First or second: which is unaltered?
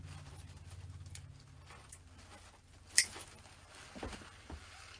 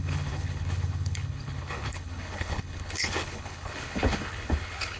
first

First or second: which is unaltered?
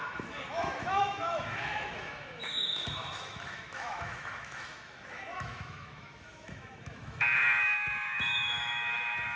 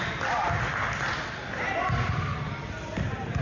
second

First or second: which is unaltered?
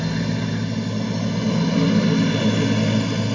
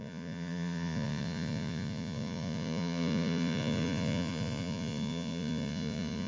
first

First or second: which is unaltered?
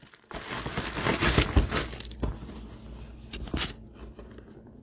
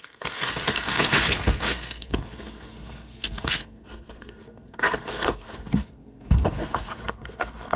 first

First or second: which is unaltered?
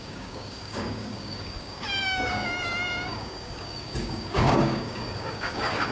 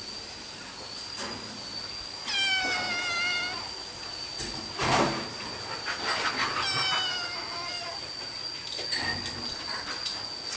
second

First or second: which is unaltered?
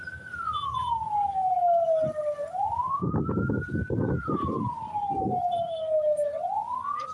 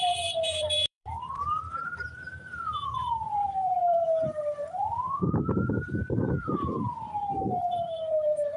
first